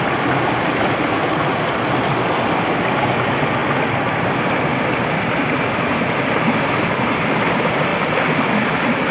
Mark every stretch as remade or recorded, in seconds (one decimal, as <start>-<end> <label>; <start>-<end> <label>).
0.0-9.1 recorded